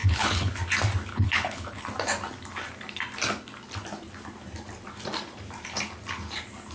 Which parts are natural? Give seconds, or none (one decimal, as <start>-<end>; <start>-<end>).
0.5-1.1; 1.8-6.7